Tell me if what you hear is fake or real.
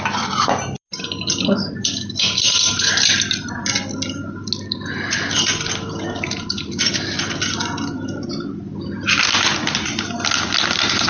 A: real